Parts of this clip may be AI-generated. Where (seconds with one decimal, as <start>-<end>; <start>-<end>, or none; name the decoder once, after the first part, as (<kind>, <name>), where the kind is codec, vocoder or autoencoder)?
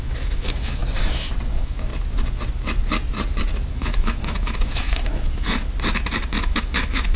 0.0-0.8 (autoencoder, DAC-VAE); 1.5-1.9; 3.7-5.6; 6.3-7.2